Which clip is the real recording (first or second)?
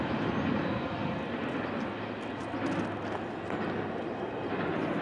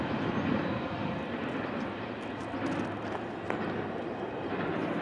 first